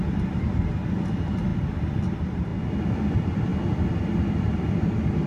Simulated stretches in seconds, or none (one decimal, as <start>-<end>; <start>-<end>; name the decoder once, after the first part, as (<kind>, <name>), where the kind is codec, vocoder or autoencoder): 0.0-1.5 (vocoder, BigVGAN v2); 2.1-3.5